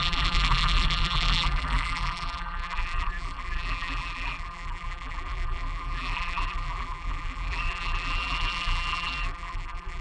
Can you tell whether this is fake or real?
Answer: fake